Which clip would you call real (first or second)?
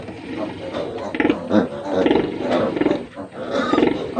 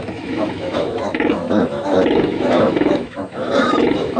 first